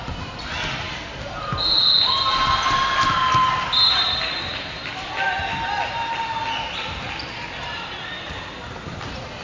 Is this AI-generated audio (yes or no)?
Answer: no